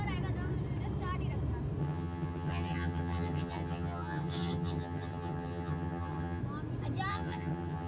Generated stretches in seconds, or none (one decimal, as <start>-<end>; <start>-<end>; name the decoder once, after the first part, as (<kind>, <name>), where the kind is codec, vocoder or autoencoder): 1.8-6.4 (vocoder, HiFi-GAN); 7.1-7.9